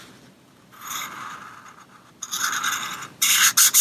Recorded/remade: recorded